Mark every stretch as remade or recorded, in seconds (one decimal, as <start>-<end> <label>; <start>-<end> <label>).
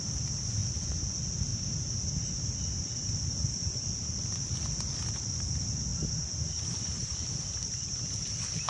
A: 0.0-8.7 recorded